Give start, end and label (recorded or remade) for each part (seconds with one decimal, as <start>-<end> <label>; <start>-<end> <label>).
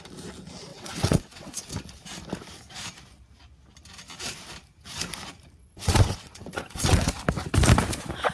0.0-0.7 recorded; 0.7-1.6 remade; 1.6-5.6 recorded; 5.6-7.1 remade; 7.1-8.3 recorded